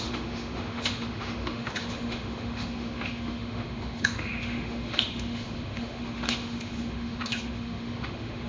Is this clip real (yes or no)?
no